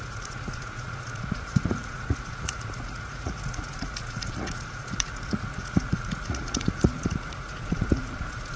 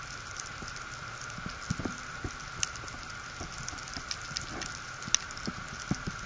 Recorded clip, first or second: second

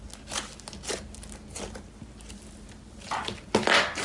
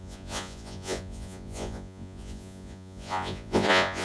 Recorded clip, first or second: first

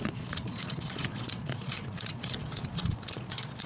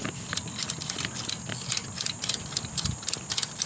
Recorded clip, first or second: second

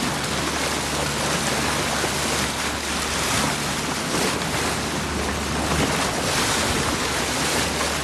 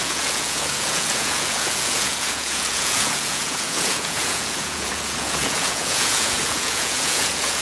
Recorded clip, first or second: first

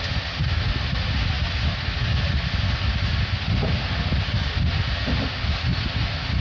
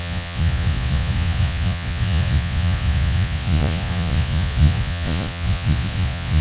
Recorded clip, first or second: first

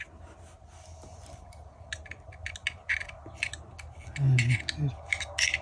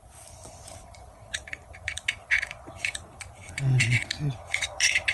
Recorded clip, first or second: first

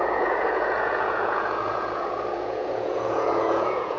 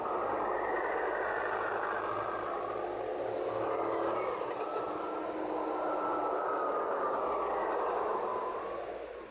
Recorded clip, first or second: second